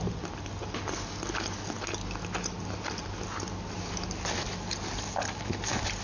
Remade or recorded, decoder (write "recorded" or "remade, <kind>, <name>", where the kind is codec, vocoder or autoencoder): recorded